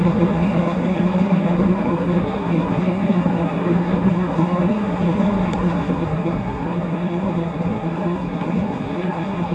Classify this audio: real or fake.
fake